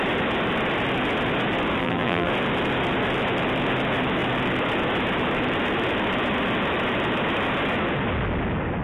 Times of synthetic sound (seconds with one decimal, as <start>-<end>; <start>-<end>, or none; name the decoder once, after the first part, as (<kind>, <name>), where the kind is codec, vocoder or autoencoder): 1.8-2.3 (vocoder, BigVGAN v2)